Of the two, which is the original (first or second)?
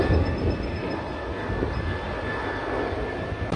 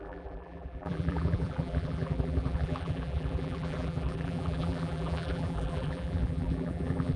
first